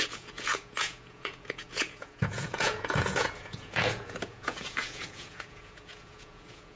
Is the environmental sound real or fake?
fake